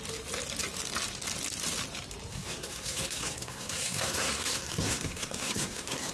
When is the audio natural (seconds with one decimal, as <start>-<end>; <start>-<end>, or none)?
0.0-2.3